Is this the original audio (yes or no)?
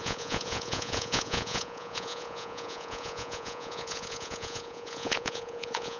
no